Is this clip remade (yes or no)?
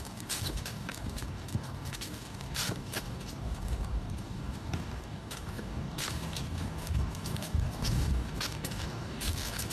yes